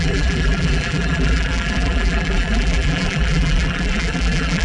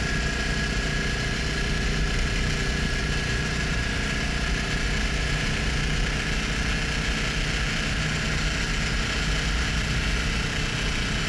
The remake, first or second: first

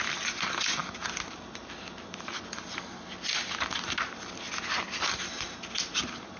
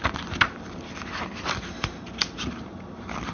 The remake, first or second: second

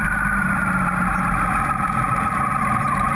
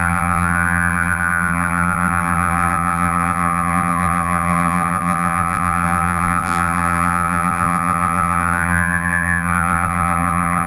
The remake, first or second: second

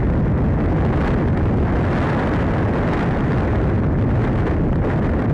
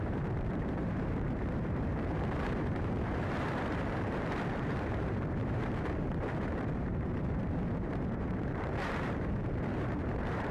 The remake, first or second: second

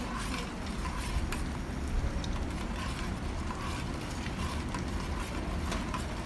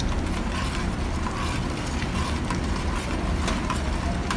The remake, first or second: first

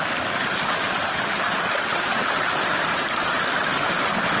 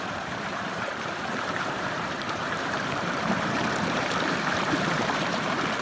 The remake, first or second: second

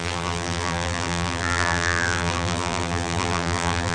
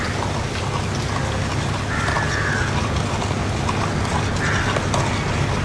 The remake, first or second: first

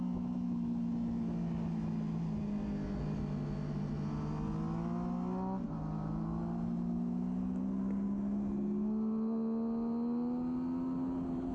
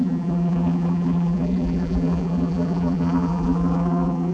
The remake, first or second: second